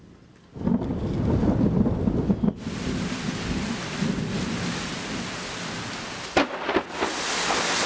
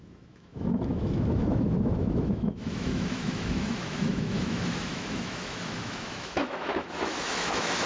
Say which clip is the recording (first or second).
first